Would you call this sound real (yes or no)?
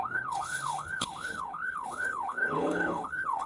no